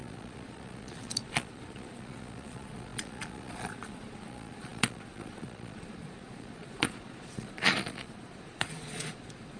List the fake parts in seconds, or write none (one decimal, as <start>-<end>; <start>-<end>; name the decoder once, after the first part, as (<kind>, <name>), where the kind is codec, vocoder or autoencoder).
0.0-9.6 (vocoder, Vocos)